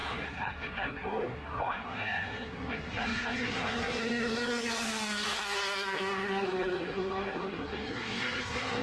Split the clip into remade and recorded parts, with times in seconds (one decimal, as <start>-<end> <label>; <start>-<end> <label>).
0.0-8.8 remade